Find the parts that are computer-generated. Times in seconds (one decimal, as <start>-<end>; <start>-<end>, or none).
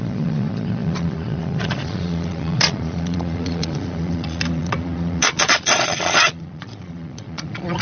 0.0-7.8